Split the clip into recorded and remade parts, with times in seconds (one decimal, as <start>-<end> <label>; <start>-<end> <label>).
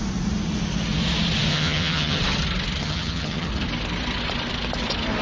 0.0-1.5 recorded; 1.5-2.2 remade; 2.2-2.8 recorded; 2.8-3.5 remade; 3.5-5.2 recorded